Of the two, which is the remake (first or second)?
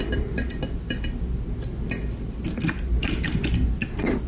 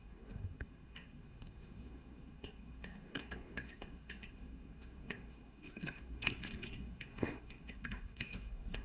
second